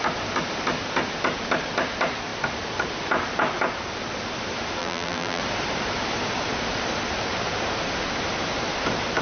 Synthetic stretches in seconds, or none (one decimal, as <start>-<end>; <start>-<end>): 4.8-5.4